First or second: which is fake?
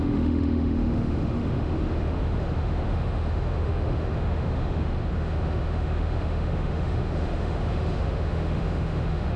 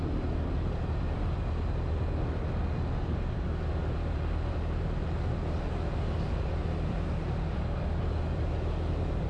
first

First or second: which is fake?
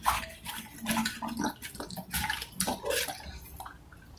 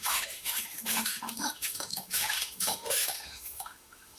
second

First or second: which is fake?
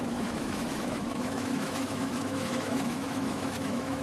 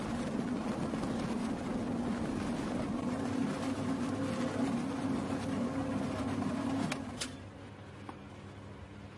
first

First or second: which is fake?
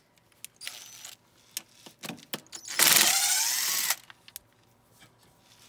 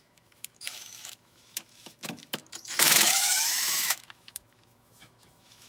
second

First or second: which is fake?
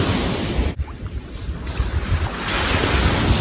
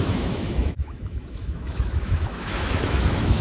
second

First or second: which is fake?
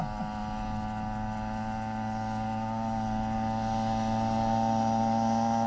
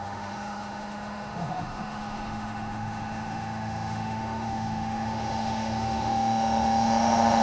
second